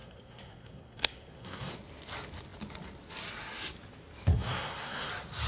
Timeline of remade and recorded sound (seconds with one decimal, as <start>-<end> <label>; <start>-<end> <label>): 0.0-1.7 remade; 1.7-4.3 recorded; 4.3-5.1 remade; 5.1-5.5 recorded